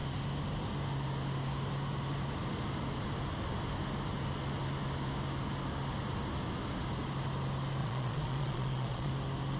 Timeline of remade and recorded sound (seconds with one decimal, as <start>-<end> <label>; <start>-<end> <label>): 0.0-7.8 recorded; 7.8-9.1 remade; 9.1-9.6 recorded